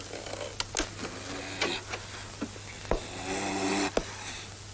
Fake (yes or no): no